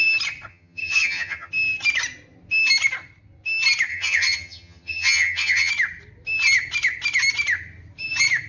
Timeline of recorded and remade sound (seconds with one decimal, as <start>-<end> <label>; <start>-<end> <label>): 0.0-0.5 recorded; 0.5-1.5 remade; 1.5-3.9 recorded; 3.9-5.7 remade; 5.7-8.5 recorded